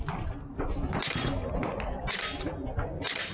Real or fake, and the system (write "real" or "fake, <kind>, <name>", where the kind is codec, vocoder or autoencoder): real